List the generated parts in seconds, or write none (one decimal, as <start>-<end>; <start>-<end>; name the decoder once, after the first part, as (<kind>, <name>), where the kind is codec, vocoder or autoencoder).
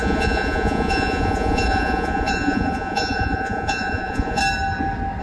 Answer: 0.0-4.4 (vocoder, Vocos)